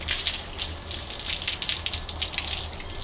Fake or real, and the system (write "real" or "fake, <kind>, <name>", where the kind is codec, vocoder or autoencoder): real